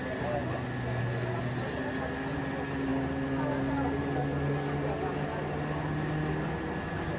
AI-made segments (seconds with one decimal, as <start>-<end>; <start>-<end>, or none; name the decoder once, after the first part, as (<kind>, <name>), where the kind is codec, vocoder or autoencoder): none